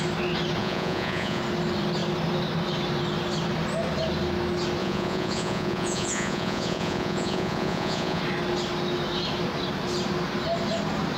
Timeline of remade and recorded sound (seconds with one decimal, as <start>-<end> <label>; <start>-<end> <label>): 0.0-0.6 recorded; 0.6-1.4 remade; 1.4-4.8 recorded; 4.8-8.2 remade; 8.2-11.2 recorded